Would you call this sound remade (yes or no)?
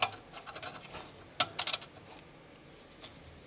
no